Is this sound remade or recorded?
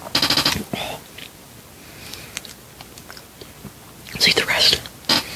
recorded